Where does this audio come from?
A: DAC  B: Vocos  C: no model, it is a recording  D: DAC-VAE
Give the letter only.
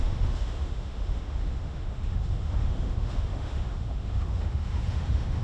D